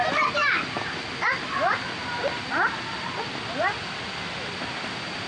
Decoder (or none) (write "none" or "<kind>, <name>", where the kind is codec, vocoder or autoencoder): none